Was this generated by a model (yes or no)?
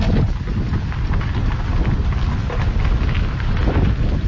no